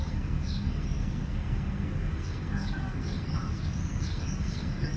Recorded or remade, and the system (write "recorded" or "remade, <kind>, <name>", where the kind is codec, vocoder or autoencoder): remade, codec, SNAC